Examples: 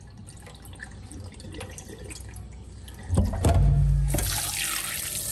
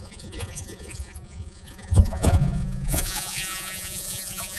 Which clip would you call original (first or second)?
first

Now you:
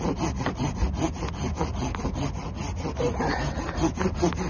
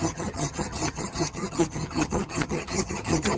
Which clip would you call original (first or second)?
first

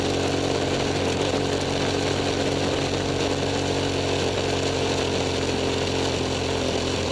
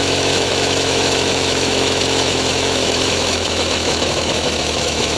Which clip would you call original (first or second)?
first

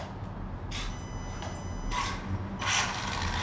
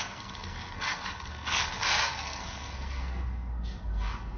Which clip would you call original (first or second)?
first